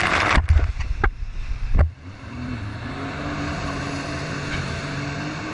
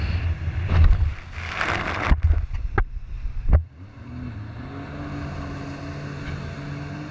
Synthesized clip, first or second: first